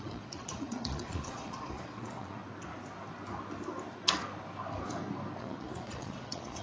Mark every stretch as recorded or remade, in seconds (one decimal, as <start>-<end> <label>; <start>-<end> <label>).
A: 0.0-2.4 remade; 2.4-5.4 recorded; 5.4-6.6 remade

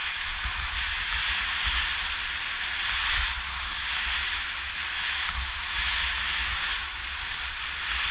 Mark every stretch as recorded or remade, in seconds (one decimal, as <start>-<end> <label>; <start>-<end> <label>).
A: 0.0-1.2 remade; 1.2-3.1 recorded; 3.1-7.0 remade; 7.0-8.1 recorded

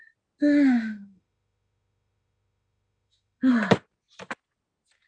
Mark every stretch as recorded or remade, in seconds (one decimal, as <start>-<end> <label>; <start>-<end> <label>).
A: 0.0-0.4 recorded; 0.4-3.5 remade; 3.5-5.1 recorded

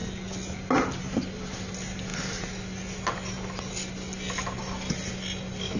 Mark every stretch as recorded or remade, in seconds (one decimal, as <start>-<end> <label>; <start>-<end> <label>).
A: 0.0-5.8 recorded

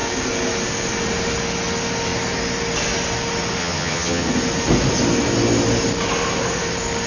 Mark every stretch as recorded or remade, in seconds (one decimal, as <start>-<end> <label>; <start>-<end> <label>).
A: 0.0-3.6 recorded; 3.6-4.3 remade; 4.3-7.1 recorded

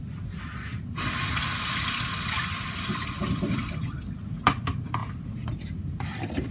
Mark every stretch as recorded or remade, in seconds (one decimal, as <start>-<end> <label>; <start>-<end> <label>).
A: 0.0-6.5 recorded

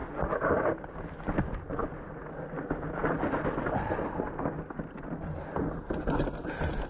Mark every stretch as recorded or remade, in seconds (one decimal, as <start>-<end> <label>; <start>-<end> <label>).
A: 0.0-1.0 remade; 1.0-6.9 recorded